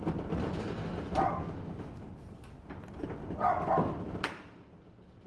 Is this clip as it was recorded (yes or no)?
yes